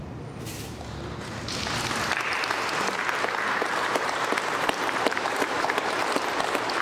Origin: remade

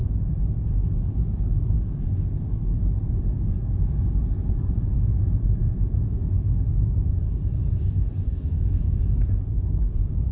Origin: remade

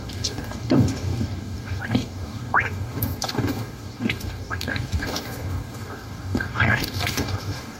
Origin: remade